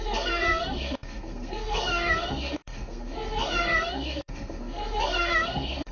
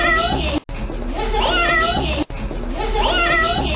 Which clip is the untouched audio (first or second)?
second